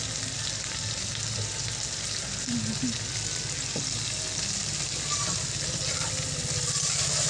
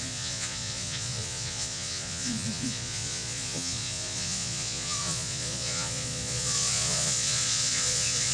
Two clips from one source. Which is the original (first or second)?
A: first